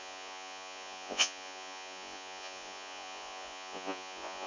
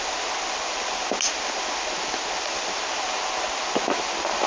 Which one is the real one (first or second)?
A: second